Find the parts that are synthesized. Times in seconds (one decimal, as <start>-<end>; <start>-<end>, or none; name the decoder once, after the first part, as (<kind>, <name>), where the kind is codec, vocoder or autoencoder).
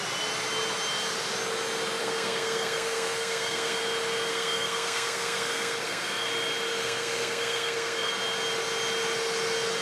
2.0-3.8 (codec, SNAC); 4.3-6.3; 6.8-8.1